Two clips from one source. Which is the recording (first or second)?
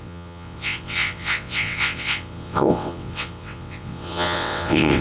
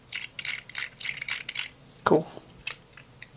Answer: second